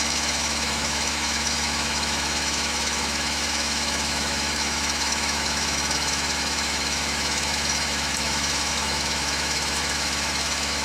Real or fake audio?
fake